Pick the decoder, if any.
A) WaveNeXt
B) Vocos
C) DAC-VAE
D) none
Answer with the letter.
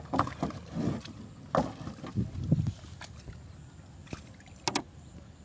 D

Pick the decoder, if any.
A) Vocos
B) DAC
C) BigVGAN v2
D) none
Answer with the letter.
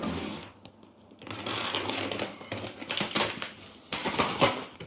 D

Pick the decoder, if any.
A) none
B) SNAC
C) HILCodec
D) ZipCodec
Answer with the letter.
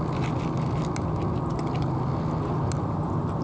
A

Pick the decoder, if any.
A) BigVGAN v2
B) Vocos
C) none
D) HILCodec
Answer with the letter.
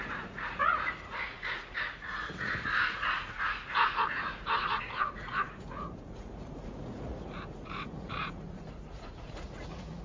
B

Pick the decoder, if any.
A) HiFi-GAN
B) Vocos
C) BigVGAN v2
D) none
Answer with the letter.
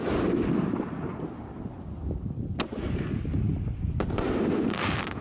D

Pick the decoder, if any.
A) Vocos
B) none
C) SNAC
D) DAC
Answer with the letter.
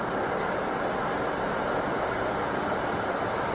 B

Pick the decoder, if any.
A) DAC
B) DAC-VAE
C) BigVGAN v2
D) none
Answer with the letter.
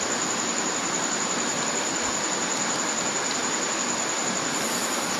D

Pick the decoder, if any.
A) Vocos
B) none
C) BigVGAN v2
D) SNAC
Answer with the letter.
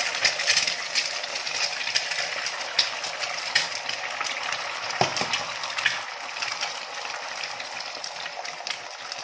B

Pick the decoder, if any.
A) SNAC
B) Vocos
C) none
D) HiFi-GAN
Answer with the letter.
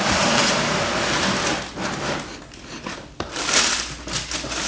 C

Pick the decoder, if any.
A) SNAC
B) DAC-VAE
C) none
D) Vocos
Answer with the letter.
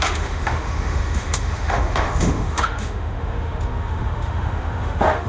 B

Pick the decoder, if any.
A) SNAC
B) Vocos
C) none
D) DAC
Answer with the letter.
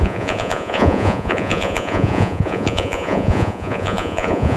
B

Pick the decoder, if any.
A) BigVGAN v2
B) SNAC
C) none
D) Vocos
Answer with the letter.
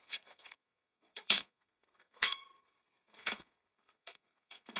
B